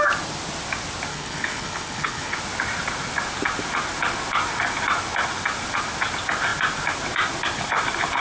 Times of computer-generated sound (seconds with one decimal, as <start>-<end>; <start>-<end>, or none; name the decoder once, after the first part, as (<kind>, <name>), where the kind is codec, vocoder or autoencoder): 1.1-2.4 (codec, HILCodec)